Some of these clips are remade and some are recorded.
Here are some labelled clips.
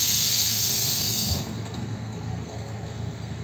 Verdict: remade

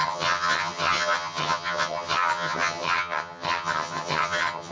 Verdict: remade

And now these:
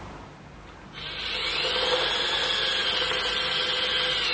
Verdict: recorded